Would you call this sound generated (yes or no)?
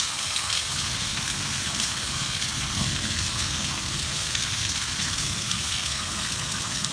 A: yes